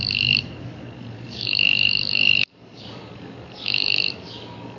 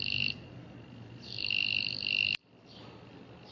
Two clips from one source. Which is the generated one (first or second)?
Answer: first